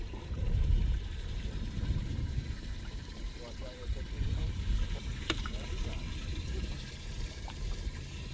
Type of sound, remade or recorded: remade